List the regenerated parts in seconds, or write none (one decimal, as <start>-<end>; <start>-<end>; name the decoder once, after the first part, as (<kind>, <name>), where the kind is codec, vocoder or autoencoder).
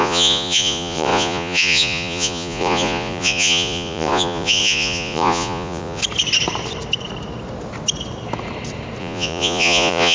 0.0-6.0 (vocoder, Vocos); 9.0-10.1